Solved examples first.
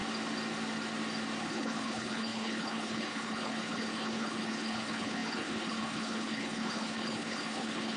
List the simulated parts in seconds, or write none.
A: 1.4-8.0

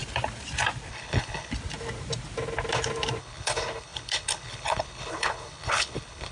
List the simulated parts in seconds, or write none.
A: 0.9-1.5; 3.2-6.3

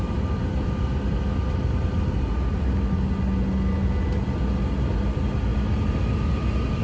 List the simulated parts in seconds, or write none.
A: none

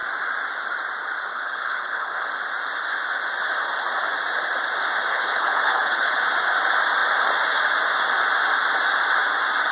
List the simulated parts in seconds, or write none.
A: 1.3-2.3; 5.1-6.2

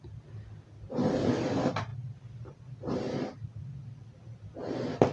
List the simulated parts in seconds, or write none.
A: none

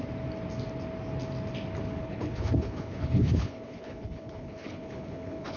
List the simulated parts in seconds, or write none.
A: 2.0-5.6

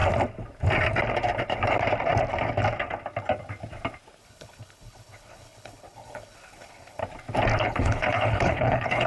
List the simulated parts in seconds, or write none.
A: 4.2-7.0; 7.6-9.1

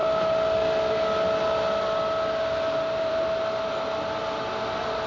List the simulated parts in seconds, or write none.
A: none